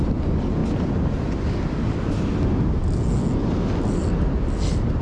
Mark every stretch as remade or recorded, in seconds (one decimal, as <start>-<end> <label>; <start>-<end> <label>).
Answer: 0.0-5.0 recorded